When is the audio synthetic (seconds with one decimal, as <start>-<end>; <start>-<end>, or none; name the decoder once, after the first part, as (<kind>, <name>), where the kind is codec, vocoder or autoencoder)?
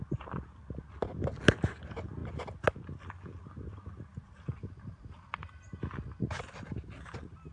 none